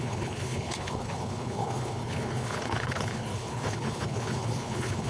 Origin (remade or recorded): remade